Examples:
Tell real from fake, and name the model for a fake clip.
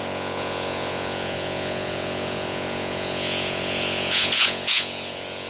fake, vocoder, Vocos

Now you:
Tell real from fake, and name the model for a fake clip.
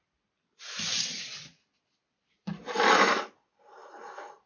real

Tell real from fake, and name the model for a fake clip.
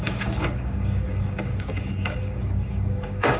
fake, codec, DAC